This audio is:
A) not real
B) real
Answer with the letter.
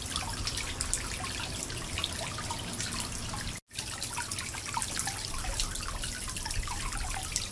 B